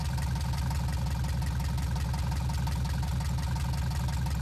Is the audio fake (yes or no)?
no